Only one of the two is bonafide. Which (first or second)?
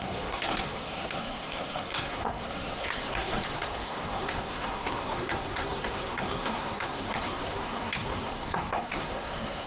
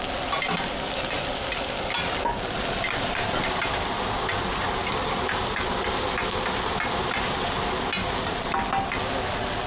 second